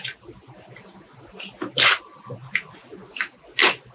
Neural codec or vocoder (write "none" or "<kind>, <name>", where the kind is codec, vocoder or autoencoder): none